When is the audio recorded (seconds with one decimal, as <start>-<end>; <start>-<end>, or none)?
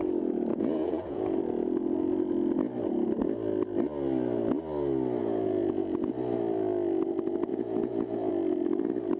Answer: 0.0-0.5; 1.4-5.2; 6.1-7.5; 8.3-9.2